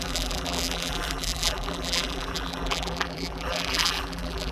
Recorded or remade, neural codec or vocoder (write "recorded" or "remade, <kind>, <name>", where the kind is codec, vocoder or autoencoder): remade, vocoder, BigVGAN v2